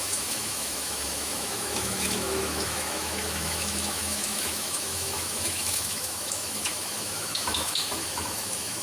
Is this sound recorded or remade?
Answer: remade